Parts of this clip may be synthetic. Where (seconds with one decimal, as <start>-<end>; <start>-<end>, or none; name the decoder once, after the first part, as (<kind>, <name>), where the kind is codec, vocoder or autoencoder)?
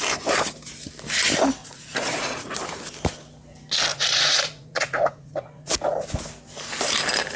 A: 1.6-2.6 (vocoder, Vocos); 3.9-5.7